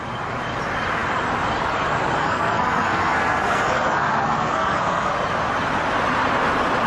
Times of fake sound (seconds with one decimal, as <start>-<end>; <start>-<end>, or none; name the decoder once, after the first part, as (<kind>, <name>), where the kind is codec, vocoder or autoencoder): 2.2-5.1 (codec, SNAC)